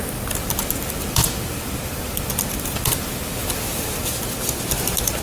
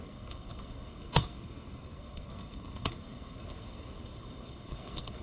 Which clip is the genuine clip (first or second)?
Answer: first